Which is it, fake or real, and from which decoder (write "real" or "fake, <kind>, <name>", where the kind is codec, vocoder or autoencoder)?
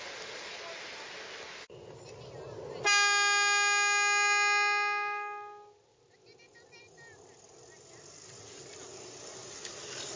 real